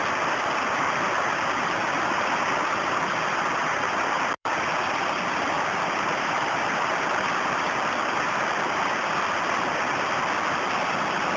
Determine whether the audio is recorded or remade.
remade